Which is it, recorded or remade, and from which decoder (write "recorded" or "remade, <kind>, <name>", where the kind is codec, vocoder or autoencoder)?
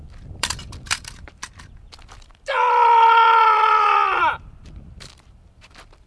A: remade, vocoder, BigVGAN v2